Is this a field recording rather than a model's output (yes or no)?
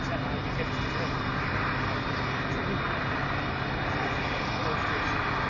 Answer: yes